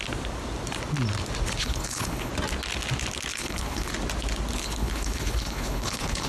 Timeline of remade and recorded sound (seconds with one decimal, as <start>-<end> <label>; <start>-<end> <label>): 0.0-1.6 recorded; 1.6-2.3 remade; 2.3-3.3 recorded; 3.3-3.9 remade; 3.9-4.6 recorded; 4.6-6.3 remade